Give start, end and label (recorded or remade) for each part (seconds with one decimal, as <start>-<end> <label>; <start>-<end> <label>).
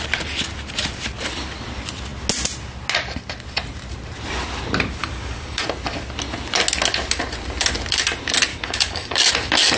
0.0-5.0 recorded; 5.0-5.6 remade; 5.6-8.5 recorded; 8.5-9.3 remade; 9.3-9.8 recorded